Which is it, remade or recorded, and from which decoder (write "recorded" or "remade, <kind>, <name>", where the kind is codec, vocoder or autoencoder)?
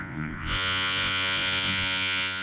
remade, vocoder, Vocos